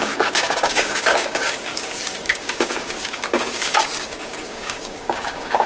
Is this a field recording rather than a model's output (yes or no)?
no